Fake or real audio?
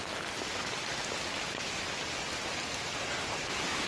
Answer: real